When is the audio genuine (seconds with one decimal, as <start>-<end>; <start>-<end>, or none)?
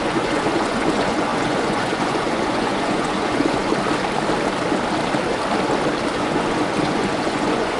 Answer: 3.7-6.2